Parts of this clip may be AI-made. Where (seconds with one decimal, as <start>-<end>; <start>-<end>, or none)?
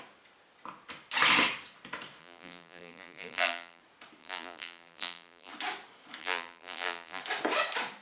2.2-3.8; 4.2-5.5; 6.2-7.2